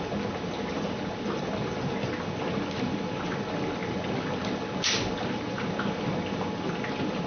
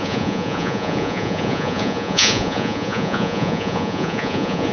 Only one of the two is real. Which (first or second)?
first